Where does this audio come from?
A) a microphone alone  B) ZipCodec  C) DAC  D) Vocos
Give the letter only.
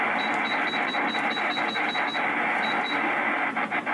A